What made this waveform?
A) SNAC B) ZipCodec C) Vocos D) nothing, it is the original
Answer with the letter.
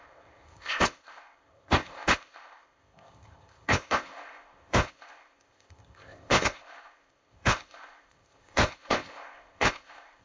B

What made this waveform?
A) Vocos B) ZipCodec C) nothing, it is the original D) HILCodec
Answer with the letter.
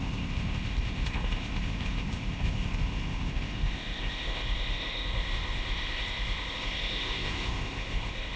B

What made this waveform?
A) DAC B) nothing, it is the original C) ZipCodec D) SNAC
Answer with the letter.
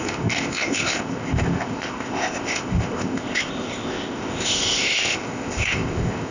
C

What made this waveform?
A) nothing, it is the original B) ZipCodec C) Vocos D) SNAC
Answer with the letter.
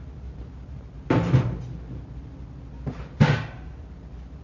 A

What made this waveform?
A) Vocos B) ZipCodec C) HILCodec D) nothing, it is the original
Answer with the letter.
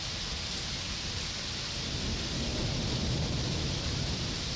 D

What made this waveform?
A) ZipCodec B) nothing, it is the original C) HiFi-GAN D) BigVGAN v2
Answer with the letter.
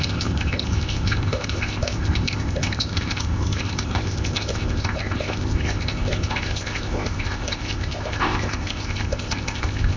A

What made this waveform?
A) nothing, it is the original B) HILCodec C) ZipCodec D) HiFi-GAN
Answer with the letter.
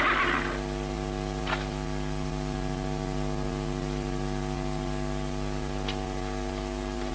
A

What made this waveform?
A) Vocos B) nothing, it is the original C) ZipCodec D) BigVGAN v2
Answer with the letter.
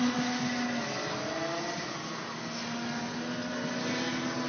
B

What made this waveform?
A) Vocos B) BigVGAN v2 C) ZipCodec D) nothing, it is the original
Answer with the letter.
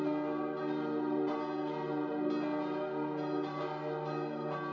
D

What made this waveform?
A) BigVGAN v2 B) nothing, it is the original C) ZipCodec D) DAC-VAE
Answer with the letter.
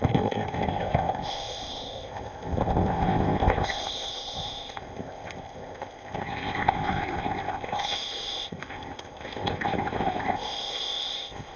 C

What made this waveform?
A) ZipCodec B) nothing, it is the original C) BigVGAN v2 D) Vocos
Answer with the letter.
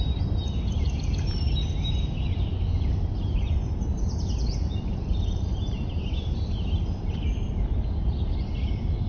B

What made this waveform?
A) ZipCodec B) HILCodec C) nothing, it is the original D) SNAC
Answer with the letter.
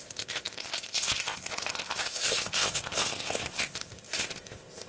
A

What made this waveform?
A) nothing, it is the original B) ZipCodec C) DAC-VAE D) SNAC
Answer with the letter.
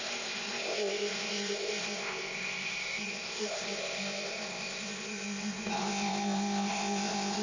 B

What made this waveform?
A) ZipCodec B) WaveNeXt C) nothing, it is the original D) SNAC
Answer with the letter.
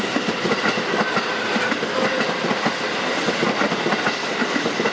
C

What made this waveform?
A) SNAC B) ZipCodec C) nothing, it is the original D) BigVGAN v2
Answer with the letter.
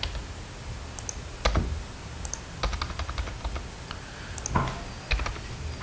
C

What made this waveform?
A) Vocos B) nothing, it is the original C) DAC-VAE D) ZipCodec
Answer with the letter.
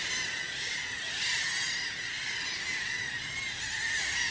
B